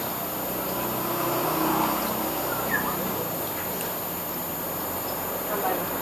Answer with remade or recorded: recorded